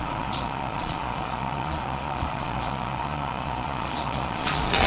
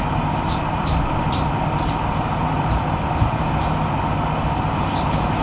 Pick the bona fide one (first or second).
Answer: second